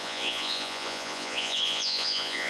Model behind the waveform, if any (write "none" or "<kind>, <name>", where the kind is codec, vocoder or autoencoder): vocoder, Vocos